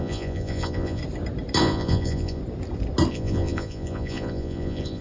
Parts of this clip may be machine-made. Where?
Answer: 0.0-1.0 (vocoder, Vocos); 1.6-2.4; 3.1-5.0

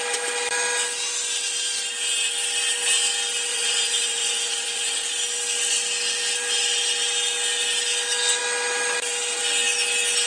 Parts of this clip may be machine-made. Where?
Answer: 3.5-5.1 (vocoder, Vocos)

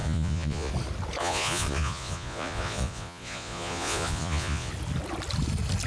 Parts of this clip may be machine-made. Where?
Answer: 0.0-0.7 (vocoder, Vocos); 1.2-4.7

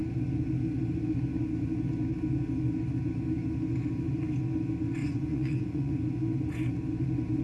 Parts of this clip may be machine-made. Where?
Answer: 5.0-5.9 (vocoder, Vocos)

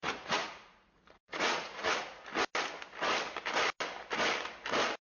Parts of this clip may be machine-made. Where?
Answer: 0.0-2.3 (vocoder, Vocos)